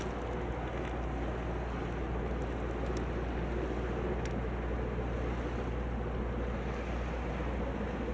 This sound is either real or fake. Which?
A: real